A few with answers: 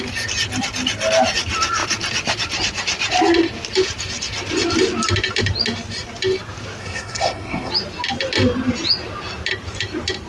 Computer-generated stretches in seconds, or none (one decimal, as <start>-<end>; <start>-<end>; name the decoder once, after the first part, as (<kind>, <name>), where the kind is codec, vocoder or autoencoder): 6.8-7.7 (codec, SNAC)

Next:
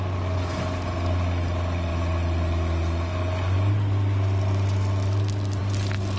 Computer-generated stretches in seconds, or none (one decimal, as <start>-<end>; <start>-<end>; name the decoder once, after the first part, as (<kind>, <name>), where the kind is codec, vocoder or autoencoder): none

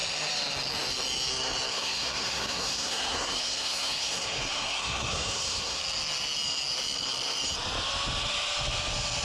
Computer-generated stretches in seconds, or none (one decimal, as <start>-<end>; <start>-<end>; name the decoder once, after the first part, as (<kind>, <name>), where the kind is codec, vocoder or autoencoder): 1.7-5.8 (codec, SNAC)

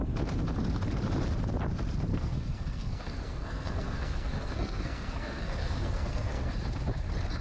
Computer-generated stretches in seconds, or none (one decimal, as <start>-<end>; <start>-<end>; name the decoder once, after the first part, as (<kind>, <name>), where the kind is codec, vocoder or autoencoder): 2.1-6.5 (codec, SNAC)

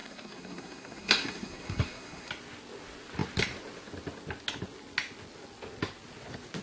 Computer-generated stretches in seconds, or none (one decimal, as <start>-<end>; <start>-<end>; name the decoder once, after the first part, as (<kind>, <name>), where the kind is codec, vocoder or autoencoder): 0.0-2.3 (codec, SNAC)

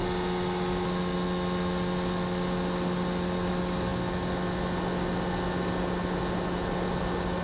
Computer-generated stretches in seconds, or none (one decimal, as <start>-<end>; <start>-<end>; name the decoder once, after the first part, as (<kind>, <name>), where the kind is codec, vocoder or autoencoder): none

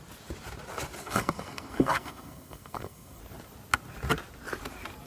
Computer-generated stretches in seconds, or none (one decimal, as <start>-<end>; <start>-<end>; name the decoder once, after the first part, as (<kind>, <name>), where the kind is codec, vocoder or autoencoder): 1.0-3.2 (codec, SNAC)

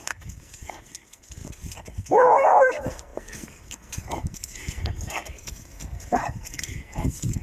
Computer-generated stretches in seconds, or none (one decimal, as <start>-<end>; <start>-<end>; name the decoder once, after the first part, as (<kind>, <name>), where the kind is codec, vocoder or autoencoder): 0.0-7.4 (codec, SNAC)